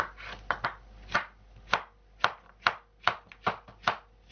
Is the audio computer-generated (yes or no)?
no